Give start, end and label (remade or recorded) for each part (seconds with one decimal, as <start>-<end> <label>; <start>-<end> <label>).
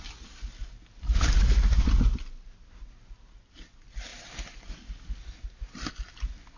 0.0-6.6 recorded